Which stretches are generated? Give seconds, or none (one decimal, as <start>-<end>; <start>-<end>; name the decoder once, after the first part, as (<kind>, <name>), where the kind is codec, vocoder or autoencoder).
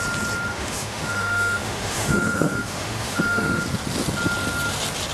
0.5-3.6 (autoencoder, DAC-VAE)